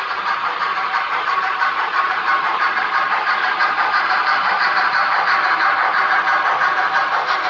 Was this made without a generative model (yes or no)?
no